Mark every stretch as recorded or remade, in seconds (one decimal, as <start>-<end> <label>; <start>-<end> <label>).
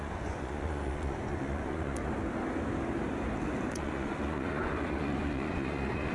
0.0-2.0 remade; 2.0-3.7 recorded; 3.7-6.1 remade